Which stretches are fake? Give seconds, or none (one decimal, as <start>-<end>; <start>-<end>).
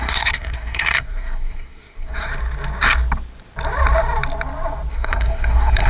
0.0-2.3; 4.9-5.9